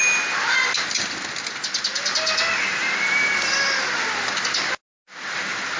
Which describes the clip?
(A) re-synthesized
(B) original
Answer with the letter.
B